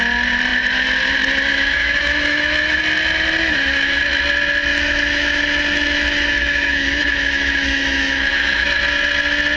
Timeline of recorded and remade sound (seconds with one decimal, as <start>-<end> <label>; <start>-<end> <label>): 0.0-1.5 recorded; 1.5-2.8 remade; 2.8-3.4 recorded; 3.4-4.0 remade; 4.0-4.7 recorded; 4.7-8.8 remade; 8.8-9.6 recorded